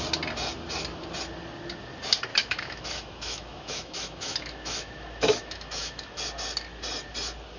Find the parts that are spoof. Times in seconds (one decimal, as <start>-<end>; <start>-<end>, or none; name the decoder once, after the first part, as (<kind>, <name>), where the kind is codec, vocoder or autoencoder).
2.3-6.2 (autoencoder, DAC-VAE)